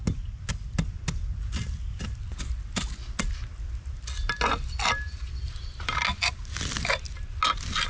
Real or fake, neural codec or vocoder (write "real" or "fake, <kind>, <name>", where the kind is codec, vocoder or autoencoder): real